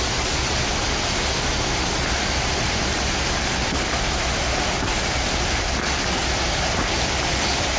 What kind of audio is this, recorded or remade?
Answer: recorded